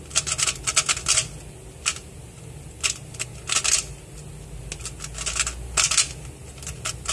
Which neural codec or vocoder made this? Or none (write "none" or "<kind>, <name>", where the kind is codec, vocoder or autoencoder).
none